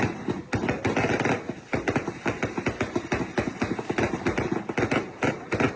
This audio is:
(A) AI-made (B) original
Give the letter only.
B